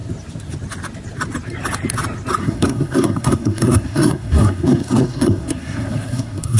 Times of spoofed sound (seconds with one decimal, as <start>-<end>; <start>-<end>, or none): 2.4-6.6

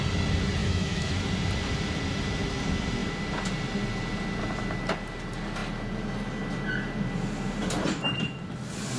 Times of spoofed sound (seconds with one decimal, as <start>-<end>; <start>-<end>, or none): 0.6-1.3

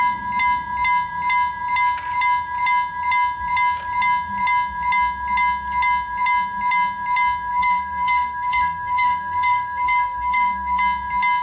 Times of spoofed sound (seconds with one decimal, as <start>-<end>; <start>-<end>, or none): 7.5-10.8

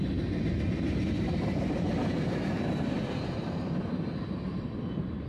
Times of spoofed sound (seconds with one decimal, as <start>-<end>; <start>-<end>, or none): none